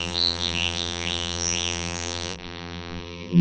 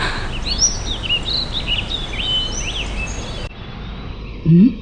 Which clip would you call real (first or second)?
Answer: second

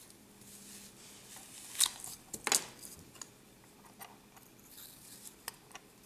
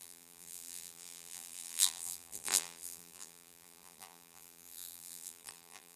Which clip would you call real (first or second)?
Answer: first